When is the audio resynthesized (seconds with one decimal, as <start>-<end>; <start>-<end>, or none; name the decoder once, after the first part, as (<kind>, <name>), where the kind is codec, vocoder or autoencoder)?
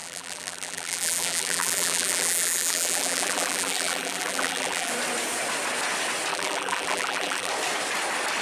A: 0.0-4.9 (vocoder, BigVGAN v2); 6.3-7.5